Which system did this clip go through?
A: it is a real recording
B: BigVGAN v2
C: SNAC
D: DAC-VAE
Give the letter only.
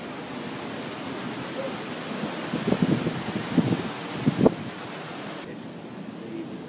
A